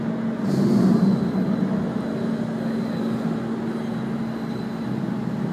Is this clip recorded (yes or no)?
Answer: yes